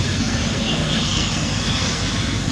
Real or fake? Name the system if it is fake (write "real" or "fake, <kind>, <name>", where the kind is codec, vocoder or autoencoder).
fake, codec, SNAC